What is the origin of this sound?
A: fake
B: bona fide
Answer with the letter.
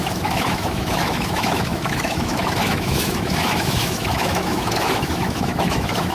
A